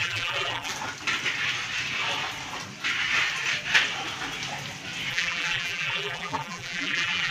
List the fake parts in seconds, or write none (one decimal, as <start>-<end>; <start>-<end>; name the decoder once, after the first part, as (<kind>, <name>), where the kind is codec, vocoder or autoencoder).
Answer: 0.0-0.7 (vocoder, BigVGAN v2); 5.1-7.3